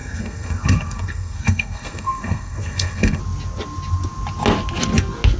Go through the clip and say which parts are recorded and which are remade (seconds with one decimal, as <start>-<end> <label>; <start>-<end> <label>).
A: 0.0-3.2 remade; 3.2-5.4 recorded